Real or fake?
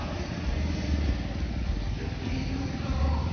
real